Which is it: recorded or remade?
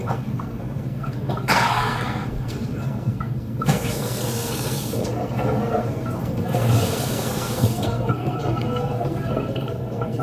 remade